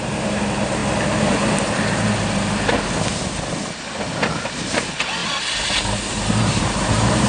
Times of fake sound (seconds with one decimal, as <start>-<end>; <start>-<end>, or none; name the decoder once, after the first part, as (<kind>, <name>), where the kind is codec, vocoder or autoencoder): 0.0-0.8 (vocoder, BigVGAN v2); 4.4-5.2; 6.4-7.3